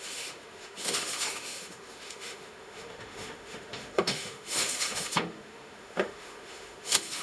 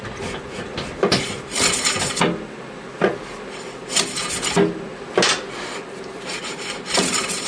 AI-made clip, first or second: first